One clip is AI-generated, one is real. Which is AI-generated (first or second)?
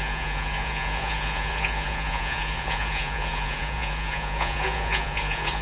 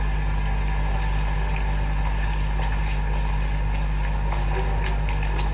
first